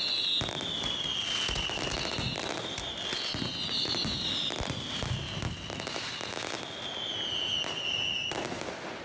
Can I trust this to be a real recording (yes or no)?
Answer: yes